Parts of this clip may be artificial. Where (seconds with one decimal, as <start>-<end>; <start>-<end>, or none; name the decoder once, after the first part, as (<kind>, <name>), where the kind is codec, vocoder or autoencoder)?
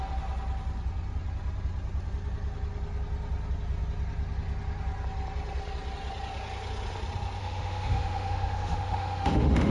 7.4-9.7 (autoencoder, DAC-VAE)